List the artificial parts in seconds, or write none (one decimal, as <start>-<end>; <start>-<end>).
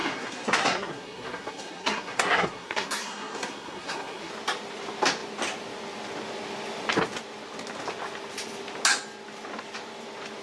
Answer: 0.0-4.3